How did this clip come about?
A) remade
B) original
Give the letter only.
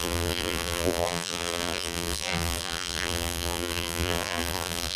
A